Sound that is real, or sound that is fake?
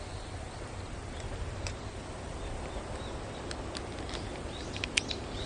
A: real